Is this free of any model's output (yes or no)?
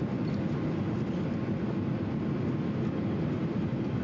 yes